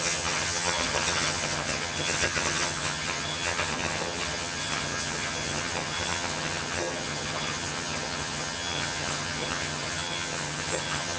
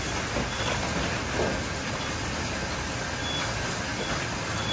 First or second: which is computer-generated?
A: first